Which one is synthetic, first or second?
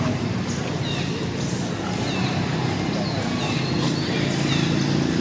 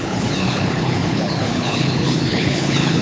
second